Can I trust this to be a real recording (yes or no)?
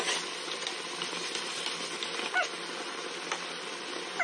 yes